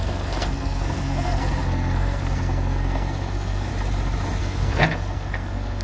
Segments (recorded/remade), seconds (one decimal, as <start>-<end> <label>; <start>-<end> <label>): 0.0-3.7 remade; 3.7-4.4 recorded; 4.4-5.8 remade